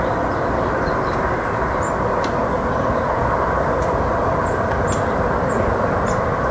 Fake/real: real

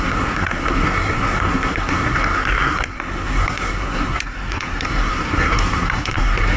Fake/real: fake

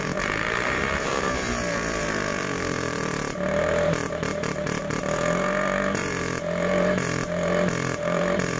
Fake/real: fake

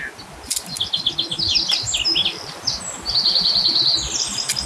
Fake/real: real